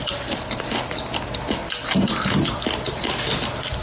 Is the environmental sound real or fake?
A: real